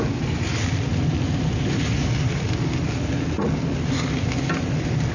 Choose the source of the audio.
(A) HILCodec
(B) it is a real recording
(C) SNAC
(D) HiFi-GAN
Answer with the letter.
B